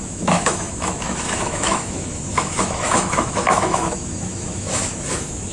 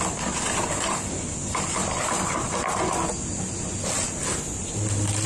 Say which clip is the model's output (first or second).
first